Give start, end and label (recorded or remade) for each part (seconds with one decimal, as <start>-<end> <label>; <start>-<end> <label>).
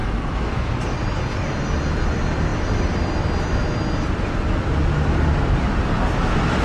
0.0-0.7 remade; 0.7-6.6 recorded